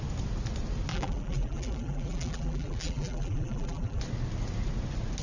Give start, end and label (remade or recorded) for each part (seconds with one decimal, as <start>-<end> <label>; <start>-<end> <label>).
0.0-0.9 recorded; 0.9-4.0 remade; 4.0-5.2 recorded